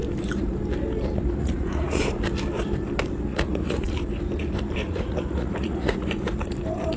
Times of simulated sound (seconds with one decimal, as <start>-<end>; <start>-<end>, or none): 1.4-2.0; 3.3-4.0; 4.8-6.3